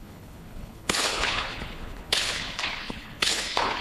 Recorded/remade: remade